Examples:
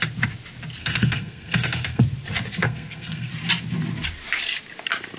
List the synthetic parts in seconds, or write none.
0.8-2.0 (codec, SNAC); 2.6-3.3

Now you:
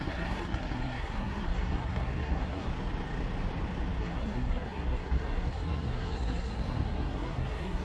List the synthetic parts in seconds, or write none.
0.0-2.7 (codec, SNAC); 4.0-7.8

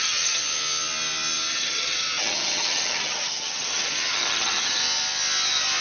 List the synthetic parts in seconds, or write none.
0.0-0.4 (vocoder, HiFi-GAN); 1.5-4.8

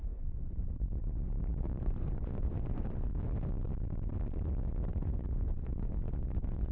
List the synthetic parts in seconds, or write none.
0.0-1.0 (vocoder, Vocos); 1.6-3.1; 4.9-6.7

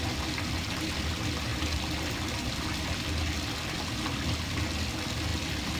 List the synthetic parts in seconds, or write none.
none

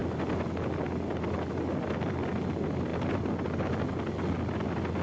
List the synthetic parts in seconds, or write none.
none

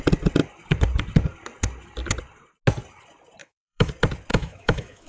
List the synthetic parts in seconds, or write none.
3.4-3.9 (autoencoder, DAC-VAE); 4.3-5.1